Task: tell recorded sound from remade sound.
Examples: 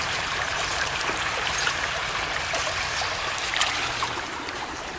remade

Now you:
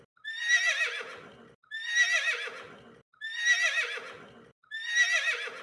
recorded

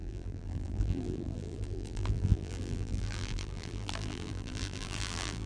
remade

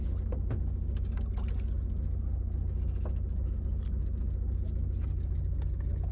recorded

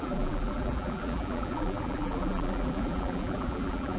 remade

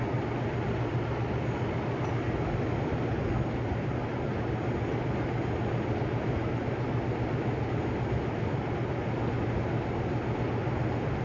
recorded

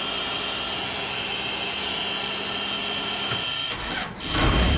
recorded